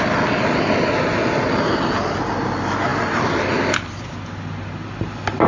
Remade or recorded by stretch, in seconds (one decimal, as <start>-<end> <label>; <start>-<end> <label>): 0.0-5.5 recorded